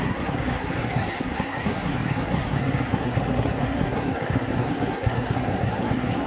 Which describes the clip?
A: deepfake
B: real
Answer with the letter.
A